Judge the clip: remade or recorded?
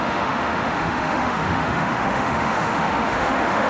remade